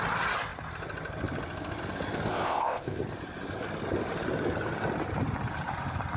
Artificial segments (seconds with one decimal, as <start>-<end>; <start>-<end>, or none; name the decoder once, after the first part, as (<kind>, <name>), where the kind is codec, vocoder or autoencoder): 2.3-3.0 (codec, ZipCodec)